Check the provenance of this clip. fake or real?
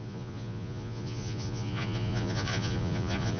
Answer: fake